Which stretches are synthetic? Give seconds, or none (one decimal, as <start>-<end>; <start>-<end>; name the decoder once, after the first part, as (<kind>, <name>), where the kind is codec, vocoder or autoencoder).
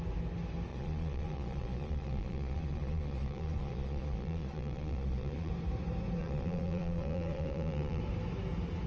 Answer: 0.7-5.5 (vocoder, Vocos); 6.2-8.0